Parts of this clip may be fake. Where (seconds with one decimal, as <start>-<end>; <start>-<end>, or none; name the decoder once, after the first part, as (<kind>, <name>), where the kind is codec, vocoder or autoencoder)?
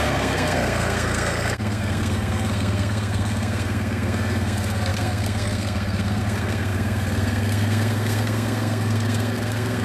0.0-9.8 (codec, SNAC)